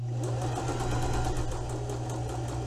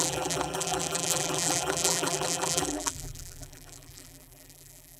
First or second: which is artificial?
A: second